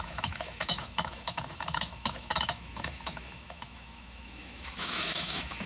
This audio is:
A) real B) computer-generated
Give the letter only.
B